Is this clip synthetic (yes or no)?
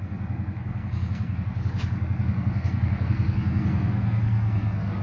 yes